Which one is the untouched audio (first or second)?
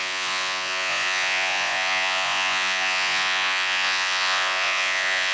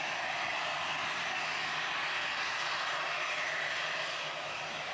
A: second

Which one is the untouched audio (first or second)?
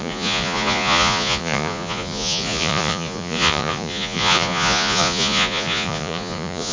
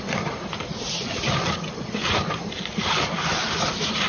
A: second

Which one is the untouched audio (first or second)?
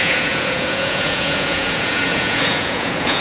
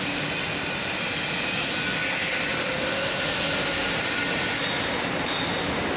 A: second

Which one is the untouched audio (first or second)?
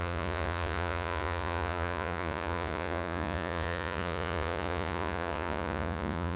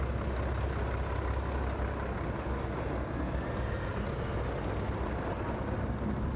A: second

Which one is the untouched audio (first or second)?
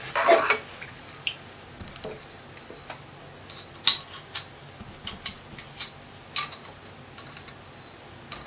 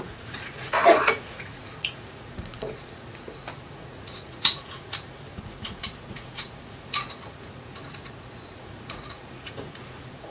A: first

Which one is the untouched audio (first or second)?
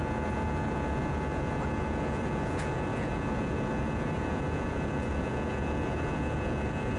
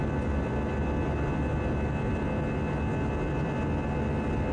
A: second